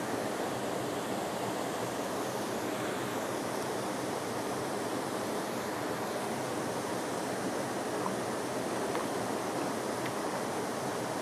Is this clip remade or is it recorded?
recorded